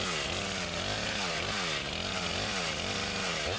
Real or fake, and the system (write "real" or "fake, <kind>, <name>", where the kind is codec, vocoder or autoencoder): real